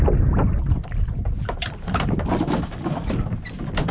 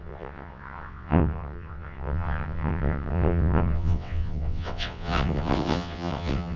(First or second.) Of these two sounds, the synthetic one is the second